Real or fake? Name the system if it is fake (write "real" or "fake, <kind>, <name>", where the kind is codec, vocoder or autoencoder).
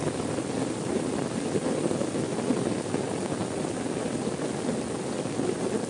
real